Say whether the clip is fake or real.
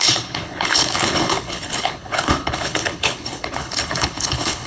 fake